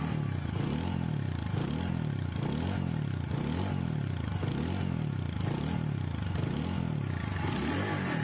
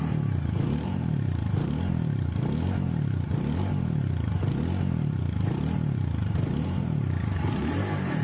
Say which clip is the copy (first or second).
second